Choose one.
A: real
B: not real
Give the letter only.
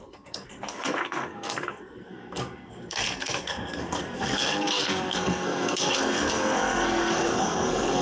B